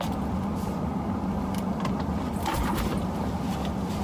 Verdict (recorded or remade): recorded